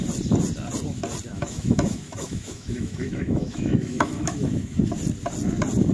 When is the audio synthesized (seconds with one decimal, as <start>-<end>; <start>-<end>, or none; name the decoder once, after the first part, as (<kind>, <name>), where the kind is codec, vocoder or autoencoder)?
1.3-4.8 (autoencoder, DAC-VAE)